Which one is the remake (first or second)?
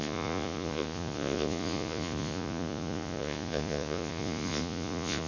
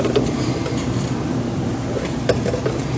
first